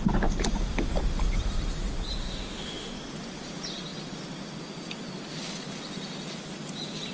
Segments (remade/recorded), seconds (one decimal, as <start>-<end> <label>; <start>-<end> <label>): 0.0-2.2 recorded; 2.2-2.9 remade; 2.9-7.1 recorded